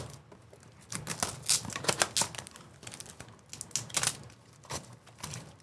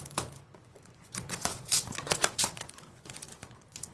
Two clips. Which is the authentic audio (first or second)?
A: first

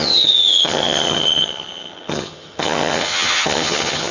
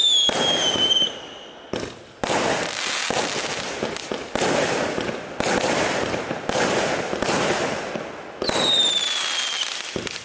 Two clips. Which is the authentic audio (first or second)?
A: second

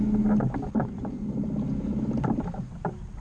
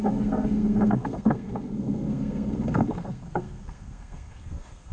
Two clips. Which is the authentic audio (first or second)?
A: first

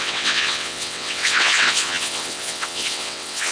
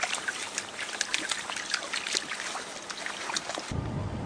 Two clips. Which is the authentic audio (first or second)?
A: second